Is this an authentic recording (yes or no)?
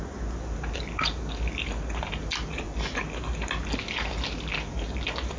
yes